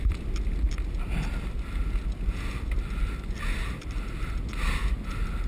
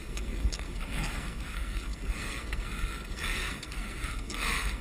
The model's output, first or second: second